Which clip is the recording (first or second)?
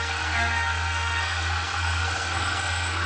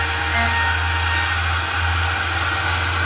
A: second